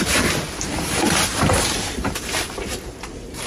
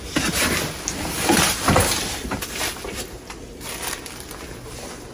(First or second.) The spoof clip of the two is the first